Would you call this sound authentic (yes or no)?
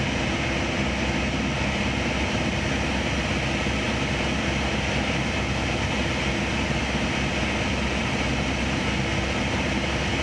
yes